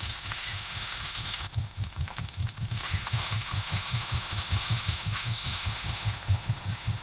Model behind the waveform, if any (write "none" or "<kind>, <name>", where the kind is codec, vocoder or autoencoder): autoencoder, DAC-VAE